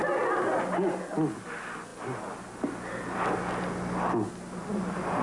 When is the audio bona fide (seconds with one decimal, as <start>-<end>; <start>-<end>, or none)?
0.0-5.2